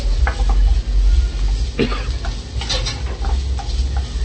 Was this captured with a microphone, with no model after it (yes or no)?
yes